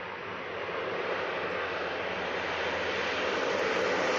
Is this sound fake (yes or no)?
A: no